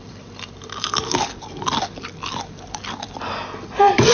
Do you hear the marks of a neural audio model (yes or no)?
yes